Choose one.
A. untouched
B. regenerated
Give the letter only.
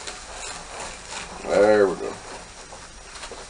A